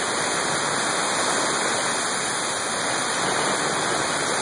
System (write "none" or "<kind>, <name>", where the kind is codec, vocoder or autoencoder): none